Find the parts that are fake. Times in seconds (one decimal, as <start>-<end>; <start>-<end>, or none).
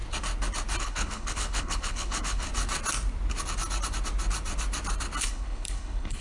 0.8-2.5; 5.2-6.2